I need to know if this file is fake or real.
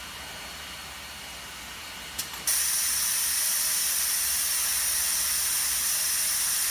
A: real